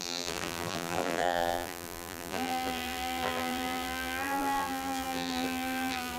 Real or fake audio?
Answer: fake